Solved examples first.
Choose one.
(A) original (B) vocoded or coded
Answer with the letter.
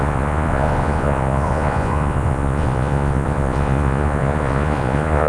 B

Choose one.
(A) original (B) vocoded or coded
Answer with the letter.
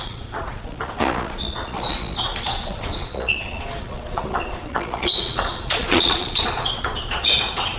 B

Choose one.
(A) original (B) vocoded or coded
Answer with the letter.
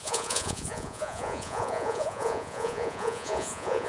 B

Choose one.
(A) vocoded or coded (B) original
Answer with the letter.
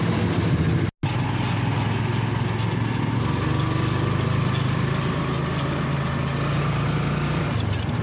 B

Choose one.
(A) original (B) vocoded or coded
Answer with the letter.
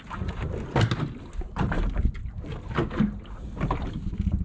A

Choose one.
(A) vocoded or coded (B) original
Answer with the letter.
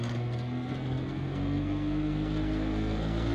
A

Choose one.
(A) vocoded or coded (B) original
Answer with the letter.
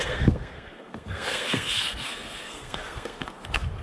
A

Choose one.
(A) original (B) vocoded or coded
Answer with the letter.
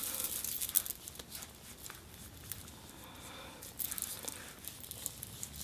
A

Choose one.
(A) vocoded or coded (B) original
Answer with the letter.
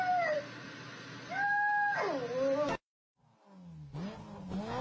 B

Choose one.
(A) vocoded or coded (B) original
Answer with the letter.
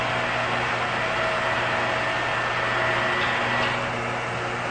B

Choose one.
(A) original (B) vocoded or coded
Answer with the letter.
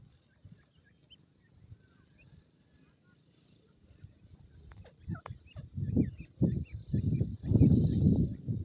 A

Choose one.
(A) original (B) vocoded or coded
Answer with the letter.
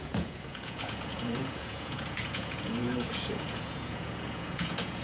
B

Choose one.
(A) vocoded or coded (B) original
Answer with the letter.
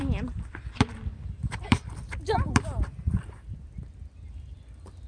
A